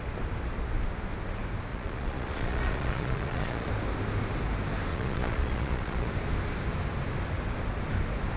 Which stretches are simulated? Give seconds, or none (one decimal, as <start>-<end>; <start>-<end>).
1.7-3.7; 4.9-6.1